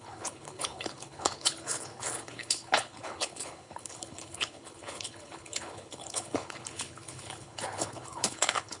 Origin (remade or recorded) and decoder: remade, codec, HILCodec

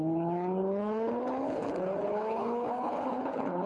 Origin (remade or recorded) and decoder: remade, codec, HILCodec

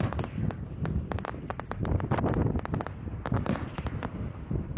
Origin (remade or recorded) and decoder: recorded